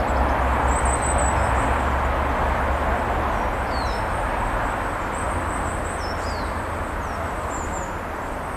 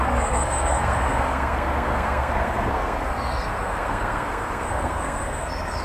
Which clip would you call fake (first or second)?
second